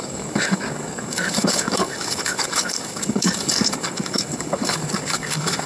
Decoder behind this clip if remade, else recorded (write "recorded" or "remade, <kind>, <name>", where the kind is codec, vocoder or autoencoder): remade, codec, DAC